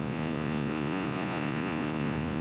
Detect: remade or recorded remade